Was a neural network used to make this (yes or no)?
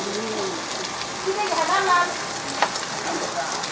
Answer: no